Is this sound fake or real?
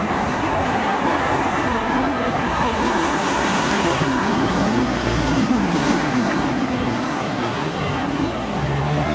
fake